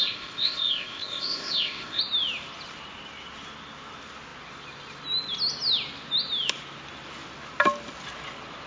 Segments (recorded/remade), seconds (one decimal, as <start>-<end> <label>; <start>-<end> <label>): 0.0-2.0 remade; 2.0-8.7 recorded